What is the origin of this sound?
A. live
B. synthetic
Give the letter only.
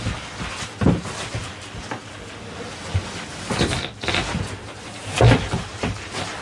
A